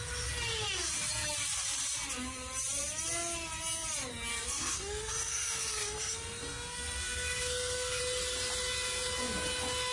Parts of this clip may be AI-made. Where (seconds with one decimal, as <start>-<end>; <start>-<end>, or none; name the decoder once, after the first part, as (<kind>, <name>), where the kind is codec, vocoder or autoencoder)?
4.3-8.0 (codec, SNAC)